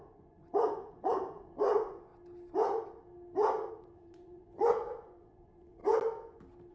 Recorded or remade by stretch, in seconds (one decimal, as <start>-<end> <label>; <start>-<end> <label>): 0.0-2.1 remade; 2.1-3.7 recorded; 3.7-5.8 remade; 5.8-6.7 recorded